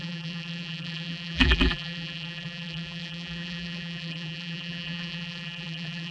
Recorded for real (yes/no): no